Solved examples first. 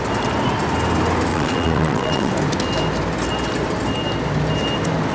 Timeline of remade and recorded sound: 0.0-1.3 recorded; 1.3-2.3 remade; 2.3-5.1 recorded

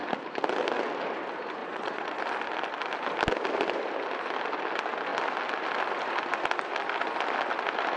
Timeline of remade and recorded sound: 0.0-1.6 recorded; 1.6-2.2 remade; 2.2-8.0 recorded

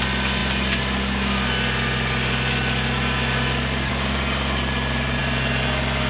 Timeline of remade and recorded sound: 0.0-6.1 recorded

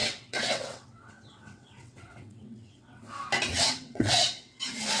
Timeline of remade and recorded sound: 0.0-3.0 remade; 3.0-3.5 recorded; 3.5-4.6 remade; 4.6-5.0 recorded

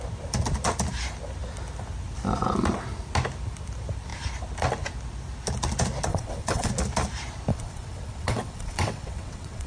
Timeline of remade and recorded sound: 0.0-6.1 recorded; 6.1-6.7 remade; 6.7-7.5 recorded; 7.5-9.7 remade